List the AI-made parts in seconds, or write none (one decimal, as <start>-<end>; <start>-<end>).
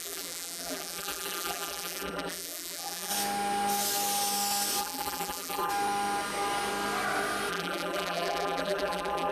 0.0-3.1; 4.8-5.7; 7.5-9.3